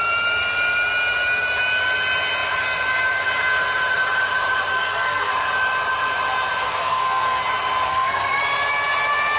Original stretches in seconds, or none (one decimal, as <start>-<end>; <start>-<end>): 0.0-4.7; 5.3-6.8; 7.4-7.9; 8.4-9.4